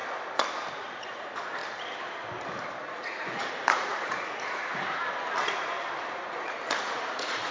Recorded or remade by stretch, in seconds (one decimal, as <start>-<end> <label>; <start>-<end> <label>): 0.0-0.7 recorded; 0.7-1.6 remade; 1.6-2.8 recorded; 2.8-5.0 remade; 5.0-6.1 recorded; 6.1-7.5 remade